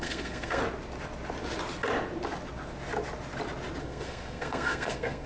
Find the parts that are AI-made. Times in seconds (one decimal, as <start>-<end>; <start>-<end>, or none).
0.0-0.6; 3.8-5.3